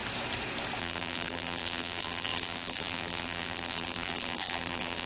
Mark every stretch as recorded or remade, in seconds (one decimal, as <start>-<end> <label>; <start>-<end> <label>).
0.0-0.8 recorded; 0.8-5.1 remade